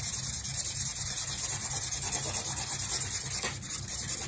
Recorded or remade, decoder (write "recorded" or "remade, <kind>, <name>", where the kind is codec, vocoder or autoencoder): recorded